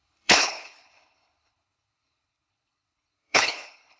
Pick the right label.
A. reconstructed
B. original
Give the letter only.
A